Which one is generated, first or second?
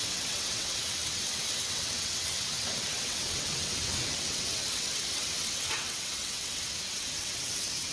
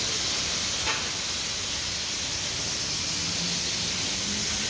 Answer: first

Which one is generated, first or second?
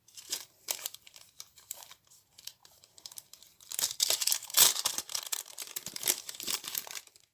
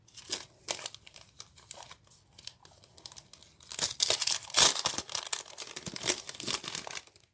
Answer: first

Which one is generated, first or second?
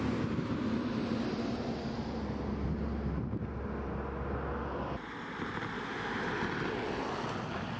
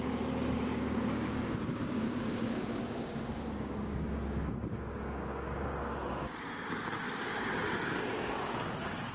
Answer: second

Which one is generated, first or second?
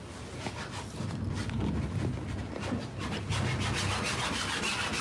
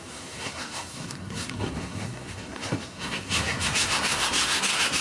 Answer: second